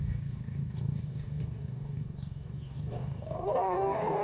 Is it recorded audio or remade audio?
remade